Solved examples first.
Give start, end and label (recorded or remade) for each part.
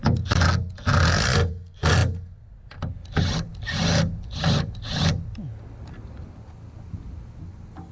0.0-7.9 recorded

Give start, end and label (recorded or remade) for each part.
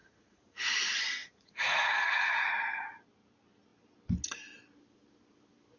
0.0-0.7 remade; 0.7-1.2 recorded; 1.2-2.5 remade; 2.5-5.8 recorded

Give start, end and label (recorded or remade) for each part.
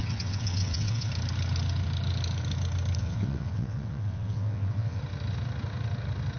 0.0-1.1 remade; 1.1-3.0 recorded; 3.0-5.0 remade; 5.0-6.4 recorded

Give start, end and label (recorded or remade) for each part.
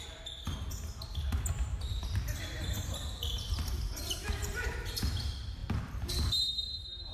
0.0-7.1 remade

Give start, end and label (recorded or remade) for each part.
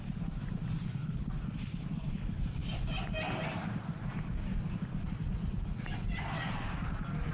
0.0-0.8 recorded; 0.8-1.3 remade; 1.3-7.3 recorded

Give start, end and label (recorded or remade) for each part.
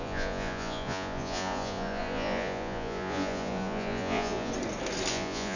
0.0-4.5 remade; 4.5-5.1 recorded; 5.1-5.6 remade